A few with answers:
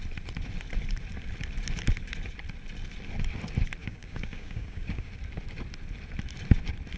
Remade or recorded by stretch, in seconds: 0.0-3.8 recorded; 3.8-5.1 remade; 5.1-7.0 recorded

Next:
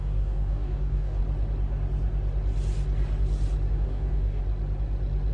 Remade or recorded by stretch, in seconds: 0.0-1.2 remade; 1.2-3.7 recorded; 3.7-4.4 remade; 4.4-5.3 recorded

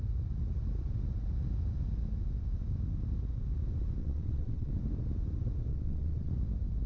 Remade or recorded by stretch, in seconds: 0.0-4.0 recorded; 4.0-4.7 remade; 4.7-5.7 recorded; 5.7-6.3 remade; 6.3-6.9 recorded

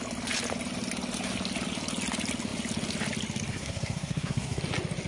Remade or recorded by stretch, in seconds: 0.0-3.5 recorded; 3.5-4.6 remade; 4.6-5.1 recorded